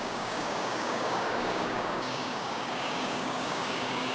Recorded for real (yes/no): no